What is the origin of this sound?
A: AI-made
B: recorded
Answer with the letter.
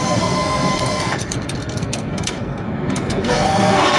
A